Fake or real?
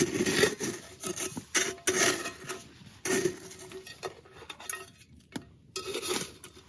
real